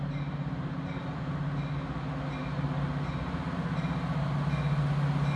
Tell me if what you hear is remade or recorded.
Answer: recorded